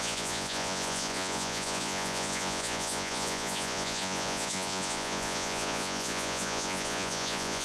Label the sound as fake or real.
fake